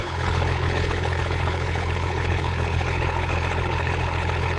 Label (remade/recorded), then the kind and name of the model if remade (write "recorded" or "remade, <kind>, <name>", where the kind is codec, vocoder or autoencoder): remade, codec, HILCodec